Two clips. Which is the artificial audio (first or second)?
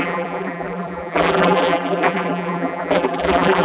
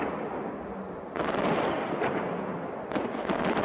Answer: first